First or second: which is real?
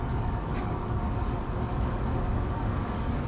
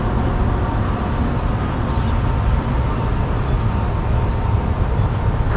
second